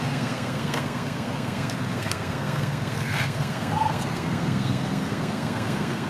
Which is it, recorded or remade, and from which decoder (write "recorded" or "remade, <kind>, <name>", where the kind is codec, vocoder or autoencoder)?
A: remade, codec, SNAC